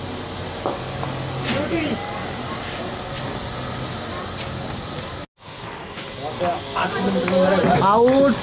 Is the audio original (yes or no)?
yes